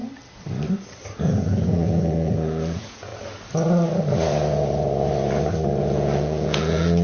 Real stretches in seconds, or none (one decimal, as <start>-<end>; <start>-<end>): 0.0-1.2; 3.1-5.8